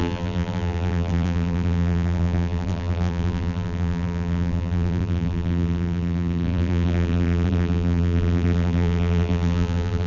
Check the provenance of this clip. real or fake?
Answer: fake